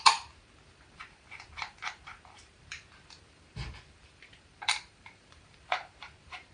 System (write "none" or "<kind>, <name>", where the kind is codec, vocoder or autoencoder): vocoder, BigVGAN v2